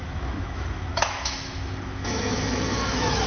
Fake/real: fake